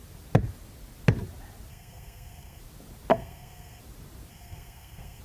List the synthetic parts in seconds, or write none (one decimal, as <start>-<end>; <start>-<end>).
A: 1.7-2.6; 3.1-3.8; 4.3-5.2